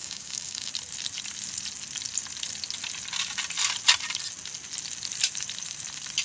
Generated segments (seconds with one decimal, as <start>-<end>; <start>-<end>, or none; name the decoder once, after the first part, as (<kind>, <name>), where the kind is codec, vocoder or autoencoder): 0.0-0.7 (codec, DAC)